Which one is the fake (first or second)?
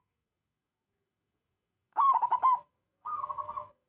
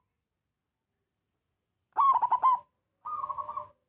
first